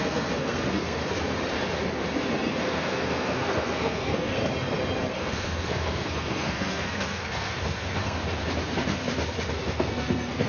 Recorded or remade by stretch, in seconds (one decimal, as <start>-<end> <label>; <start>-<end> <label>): 0.0-1.0 remade; 1.0-2.5 recorded; 2.5-4.4 remade; 4.4-5.1 recorded; 5.1-8.2 remade; 8.2-9.5 recorded; 9.5-10.5 remade